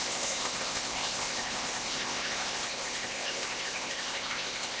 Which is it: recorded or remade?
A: remade